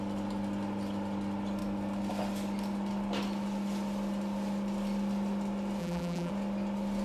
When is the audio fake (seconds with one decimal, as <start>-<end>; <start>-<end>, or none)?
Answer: 5.8-6.3